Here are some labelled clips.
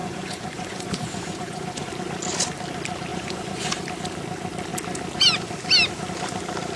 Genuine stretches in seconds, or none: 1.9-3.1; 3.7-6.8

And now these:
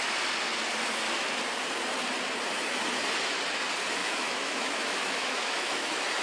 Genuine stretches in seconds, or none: 0.0-4.0

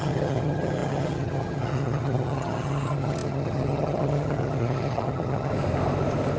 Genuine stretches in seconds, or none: 5.5-6.4